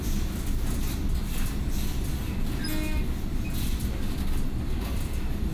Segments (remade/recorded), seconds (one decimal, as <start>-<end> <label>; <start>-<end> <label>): 0.0-5.5 recorded

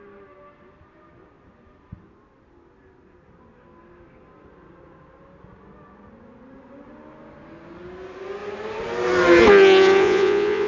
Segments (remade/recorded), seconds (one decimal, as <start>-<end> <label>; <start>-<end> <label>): 0.0-10.0 recorded; 10.0-10.7 remade

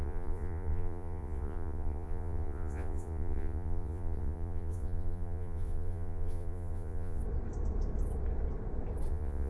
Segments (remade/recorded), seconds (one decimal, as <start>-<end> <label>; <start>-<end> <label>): 0.0-7.2 remade; 7.2-9.1 recorded; 9.1-9.5 remade

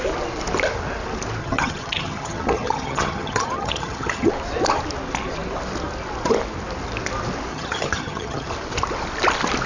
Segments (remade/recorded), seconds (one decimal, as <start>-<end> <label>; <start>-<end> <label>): 0.0-1.4 recorded; 1.4-4.3 remade; 4.3-7.5 recorded; 7.5-8.5 remade; 8.5-9.7 recorded